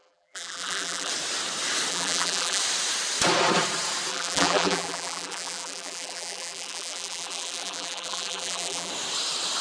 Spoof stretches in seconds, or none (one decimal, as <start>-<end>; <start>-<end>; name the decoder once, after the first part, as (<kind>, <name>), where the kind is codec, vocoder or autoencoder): 0.0-1.1 (vocoder, BigVGAN v2); 1.9-2.6; 4.1-8.9